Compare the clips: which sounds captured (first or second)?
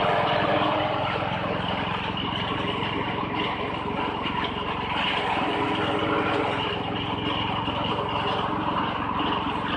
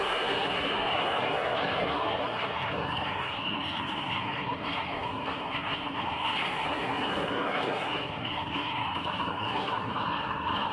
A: first